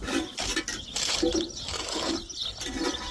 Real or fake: real